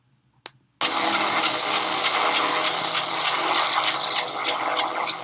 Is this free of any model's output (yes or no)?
yes